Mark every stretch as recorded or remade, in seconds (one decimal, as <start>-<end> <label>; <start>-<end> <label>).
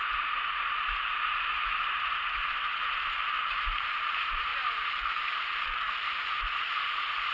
0.0-4.5 remade; 4.5-6.1 recorded; 6.1-7.3 remade